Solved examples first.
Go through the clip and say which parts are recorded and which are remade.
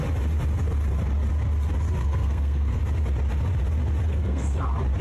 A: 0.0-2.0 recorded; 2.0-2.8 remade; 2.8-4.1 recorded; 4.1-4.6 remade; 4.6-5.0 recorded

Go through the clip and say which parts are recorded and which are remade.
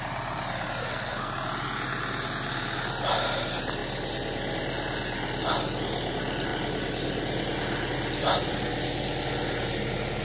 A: 0.0-0.8 recorded; 0.8-1.3 remade; 1.3-10.2 recorded